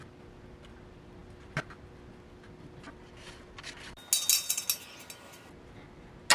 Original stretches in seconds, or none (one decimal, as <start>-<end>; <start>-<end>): 0.0-6.3